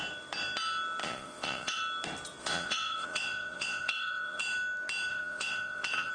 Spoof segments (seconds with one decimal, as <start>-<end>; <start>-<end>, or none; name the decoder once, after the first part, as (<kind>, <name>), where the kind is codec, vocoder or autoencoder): 1.0-1.8 (vocoder, Vocos); 2.4-4.4; 5.1-6.1